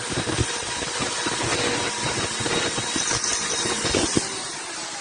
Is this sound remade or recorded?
recorded